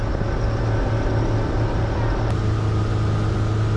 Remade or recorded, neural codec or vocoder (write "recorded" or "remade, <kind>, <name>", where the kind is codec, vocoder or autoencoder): recorded